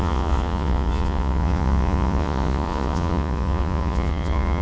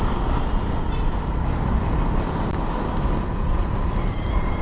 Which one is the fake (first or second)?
first